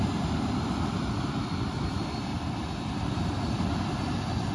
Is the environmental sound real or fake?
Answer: fake